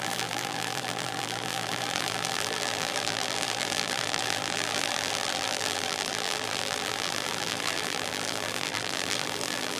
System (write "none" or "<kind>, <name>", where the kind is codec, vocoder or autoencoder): vocoder, BigVGAN v2